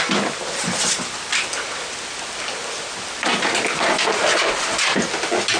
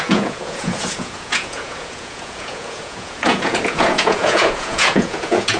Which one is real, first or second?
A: first